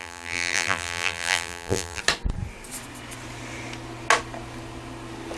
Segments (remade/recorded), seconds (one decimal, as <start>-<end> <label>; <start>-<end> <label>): 0.0-2.0 remade; 2.0-5.4 recorded